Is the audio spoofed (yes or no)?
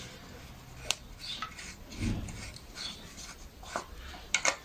no